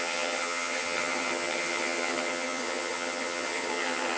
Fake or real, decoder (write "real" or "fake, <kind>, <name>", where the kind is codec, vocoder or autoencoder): fake, vocoder, HiFi-GAN